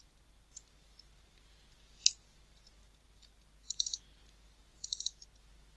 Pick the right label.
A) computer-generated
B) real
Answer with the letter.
B